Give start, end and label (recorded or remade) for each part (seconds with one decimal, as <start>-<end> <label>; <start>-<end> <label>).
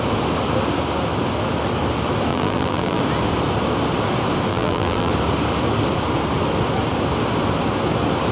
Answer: 0.0-2.3 recorded; 2.3-3.0 remade; 3.0-4.5 recorded; 4.5-5.1 remade; 5.1-8.3 recorded